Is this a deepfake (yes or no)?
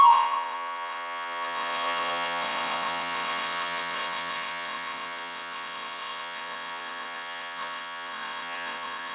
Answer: yes